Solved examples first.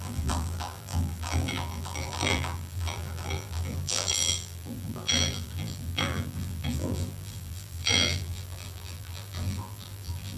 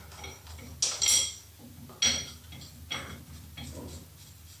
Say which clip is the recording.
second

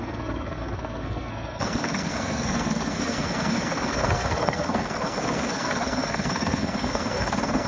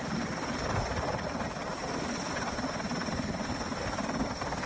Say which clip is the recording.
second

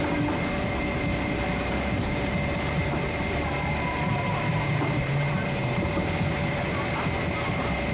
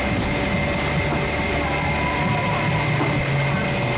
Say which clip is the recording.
second